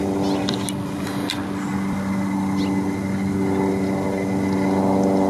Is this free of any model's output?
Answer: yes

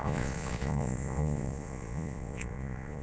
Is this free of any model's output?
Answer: no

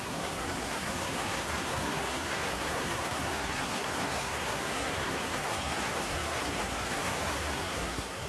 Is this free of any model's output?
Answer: no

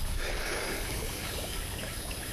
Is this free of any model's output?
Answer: no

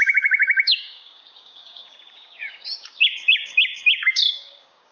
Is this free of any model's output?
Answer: no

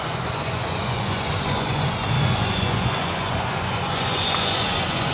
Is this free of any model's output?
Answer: no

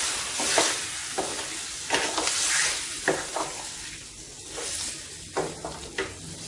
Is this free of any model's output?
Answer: yes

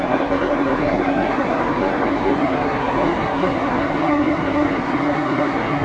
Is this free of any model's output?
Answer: no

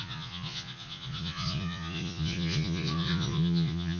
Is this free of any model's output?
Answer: no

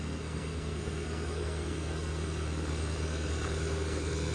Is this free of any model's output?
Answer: no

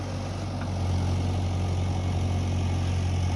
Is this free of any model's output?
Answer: yes